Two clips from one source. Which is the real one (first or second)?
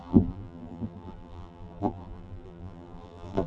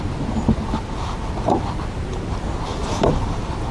second